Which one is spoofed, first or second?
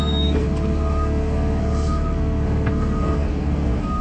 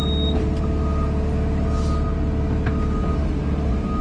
first